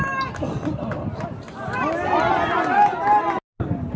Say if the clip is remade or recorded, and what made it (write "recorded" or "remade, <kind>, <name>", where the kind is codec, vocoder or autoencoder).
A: recorded